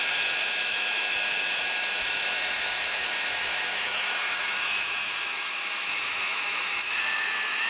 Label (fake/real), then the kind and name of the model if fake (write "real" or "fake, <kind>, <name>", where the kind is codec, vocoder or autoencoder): fake, autoencoder, DAC-VAE